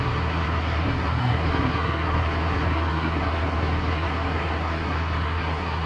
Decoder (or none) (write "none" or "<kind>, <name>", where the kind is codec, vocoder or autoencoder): codec, SNAC